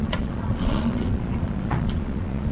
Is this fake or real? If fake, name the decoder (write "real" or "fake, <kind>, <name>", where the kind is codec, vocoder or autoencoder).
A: fake, vocoder, Vocos